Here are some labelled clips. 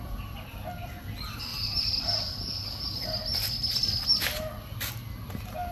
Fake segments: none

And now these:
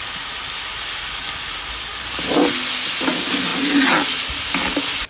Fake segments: none